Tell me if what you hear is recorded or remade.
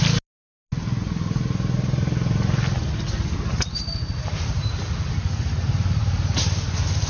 recorded